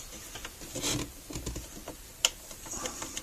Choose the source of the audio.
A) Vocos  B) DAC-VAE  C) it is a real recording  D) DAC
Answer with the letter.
C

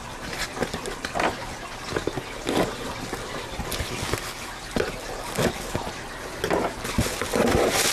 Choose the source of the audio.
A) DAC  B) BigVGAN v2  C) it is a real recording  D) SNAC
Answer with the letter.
C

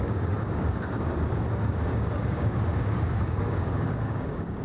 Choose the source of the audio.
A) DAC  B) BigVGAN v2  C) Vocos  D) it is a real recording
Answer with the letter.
A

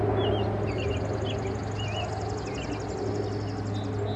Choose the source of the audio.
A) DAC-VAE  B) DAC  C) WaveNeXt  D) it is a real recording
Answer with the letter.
D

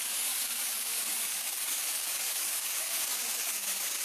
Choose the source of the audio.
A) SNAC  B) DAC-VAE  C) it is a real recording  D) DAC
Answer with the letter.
D